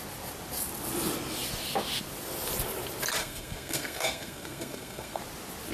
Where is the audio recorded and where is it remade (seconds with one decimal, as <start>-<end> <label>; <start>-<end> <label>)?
0.0-3.2 recorded; 3.2-5.2 remade; 5.2-5.7 recorded